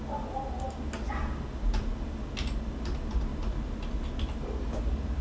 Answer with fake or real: real